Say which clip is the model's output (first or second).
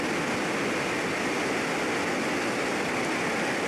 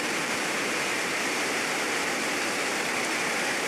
second